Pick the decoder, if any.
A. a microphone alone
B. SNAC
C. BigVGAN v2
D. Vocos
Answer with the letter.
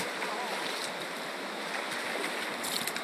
A